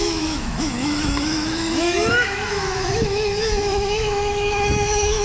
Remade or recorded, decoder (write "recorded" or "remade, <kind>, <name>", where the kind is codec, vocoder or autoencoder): remade, autoencoder, DAC-VAE